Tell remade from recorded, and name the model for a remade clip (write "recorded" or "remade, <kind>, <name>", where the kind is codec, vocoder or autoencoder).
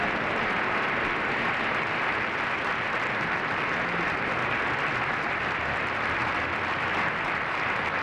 recorded